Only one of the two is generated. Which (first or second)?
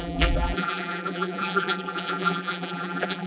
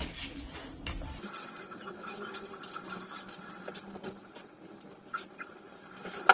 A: first